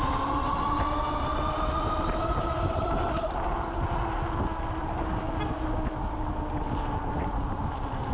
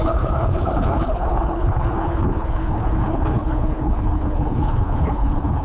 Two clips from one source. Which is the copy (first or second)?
second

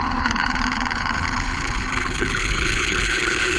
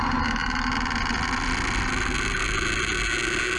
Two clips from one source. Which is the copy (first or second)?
first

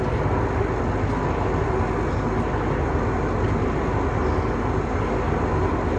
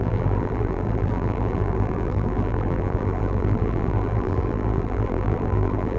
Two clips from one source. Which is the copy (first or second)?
second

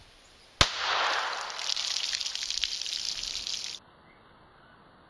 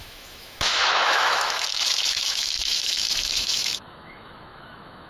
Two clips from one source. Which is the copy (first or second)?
second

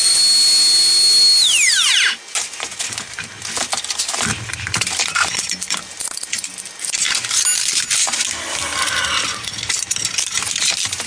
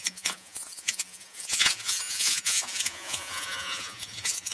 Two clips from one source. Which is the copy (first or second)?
second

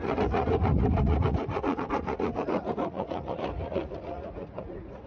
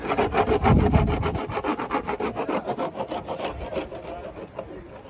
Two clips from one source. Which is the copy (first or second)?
first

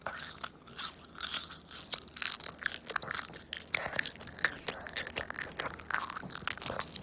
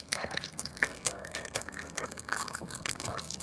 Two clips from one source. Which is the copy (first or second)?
second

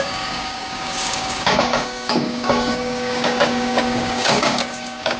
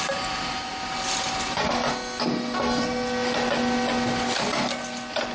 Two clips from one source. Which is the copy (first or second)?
first